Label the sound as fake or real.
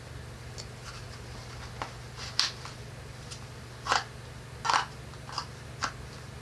real